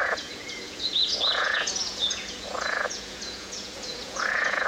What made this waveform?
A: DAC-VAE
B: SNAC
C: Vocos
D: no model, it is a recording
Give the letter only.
C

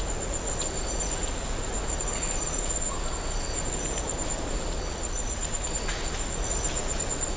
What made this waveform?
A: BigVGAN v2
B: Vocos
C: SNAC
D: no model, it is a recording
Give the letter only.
B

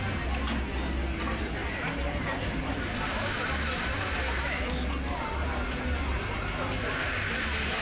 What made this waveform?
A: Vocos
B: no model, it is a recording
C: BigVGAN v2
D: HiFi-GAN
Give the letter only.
B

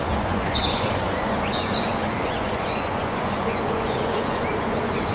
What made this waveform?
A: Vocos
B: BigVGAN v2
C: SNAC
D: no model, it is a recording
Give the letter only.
A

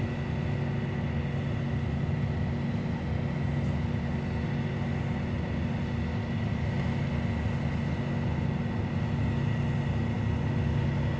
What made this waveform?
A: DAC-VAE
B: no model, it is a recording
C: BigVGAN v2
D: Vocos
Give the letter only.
B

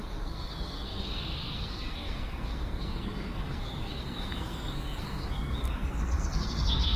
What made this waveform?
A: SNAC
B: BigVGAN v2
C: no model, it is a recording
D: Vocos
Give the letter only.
A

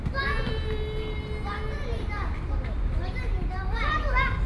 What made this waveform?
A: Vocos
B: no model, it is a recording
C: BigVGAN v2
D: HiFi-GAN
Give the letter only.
B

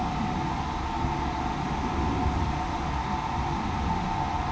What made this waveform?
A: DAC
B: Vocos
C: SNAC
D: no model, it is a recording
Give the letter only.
D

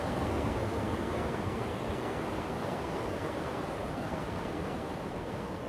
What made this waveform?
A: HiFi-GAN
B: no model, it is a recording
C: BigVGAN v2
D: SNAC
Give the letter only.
D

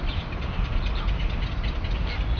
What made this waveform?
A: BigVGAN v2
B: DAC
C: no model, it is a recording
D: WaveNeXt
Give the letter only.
C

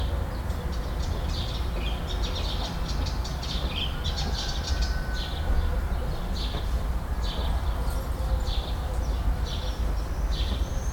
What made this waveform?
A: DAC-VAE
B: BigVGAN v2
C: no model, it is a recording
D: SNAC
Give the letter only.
C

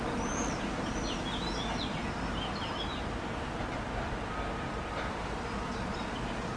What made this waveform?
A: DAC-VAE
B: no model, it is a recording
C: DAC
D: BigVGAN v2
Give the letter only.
B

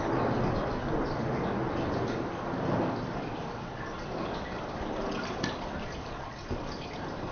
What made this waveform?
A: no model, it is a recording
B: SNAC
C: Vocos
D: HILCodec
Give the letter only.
A